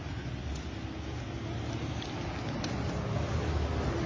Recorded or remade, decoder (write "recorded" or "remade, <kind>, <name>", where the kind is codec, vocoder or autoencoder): recorded